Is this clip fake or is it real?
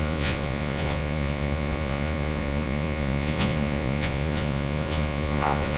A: fake